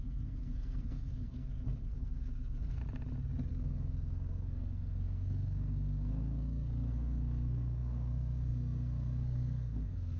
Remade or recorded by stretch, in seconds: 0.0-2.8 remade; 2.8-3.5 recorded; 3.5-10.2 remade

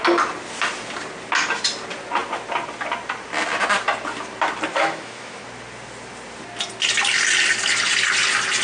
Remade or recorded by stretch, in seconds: 0.0-4.7 recorded; 4.7-5.4 remade; 5.4-8.6 recorded

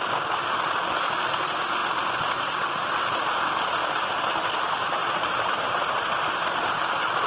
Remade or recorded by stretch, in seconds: 0.0-3.8 recorded; 3.8-4.4 remade; 4.4-5.0 recorded; 5.0-5.7 remade; 5.7-7.3 recorded

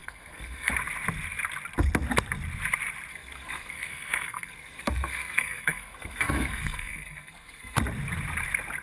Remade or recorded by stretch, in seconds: 0.0-0.7 remade; 0.7-3.1 recorded; 3.1-7.8 remade; 7.8-8.8 recorded

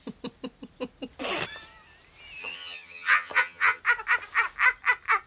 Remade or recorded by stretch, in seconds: 0.0-2.4 recorded; 2.4-3.8 remade; 3.8-5.3 recorded

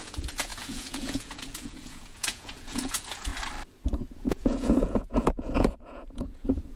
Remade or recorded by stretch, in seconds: 0.0-3.3 remade; 3.3-4.2 recorded; 4.2-6.8 remade